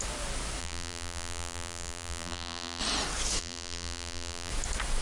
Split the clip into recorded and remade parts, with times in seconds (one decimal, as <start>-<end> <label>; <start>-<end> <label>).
0.0-0.6 recorded; 0.6-2.8 remade; 2.8-3.4 recorded; 3.4-4.5 remade; 4.5-5.0 recorded